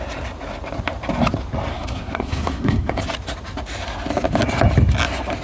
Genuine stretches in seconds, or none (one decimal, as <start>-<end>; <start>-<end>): 0.0-1.7; 3.0-5.4